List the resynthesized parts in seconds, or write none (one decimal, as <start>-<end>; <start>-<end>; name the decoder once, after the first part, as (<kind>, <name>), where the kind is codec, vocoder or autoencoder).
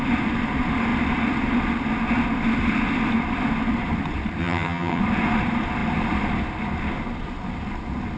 4.4-5.0 (vocoder, HiFi-GAN)